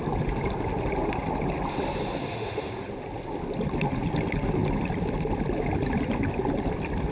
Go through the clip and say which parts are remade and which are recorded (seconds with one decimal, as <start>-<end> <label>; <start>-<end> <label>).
0.0-2.2 recorded; 2.2-2.7 remade; 2.7-7.1 recorded